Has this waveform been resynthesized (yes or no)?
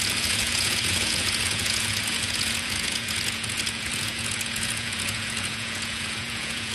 yes